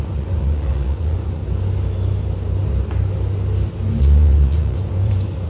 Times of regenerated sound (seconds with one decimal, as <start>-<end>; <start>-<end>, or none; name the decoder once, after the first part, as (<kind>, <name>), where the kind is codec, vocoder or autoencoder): 0.0-1.4 (vocoder, Vocos); 4.0-5.5